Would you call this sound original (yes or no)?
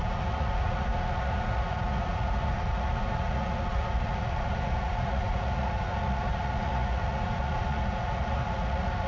no